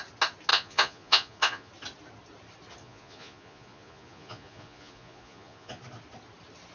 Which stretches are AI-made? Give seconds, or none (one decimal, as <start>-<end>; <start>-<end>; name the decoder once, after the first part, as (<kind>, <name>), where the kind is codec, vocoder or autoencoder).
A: 0.5-1.7 (vocoder, Vocos); 2.8-5.8